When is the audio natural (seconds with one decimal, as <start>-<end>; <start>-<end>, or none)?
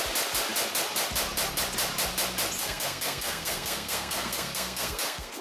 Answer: 0.0-2.6